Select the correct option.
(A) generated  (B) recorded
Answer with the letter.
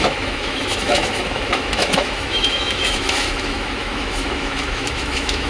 A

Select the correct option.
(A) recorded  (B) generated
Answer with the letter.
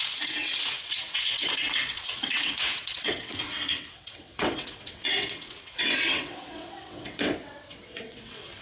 B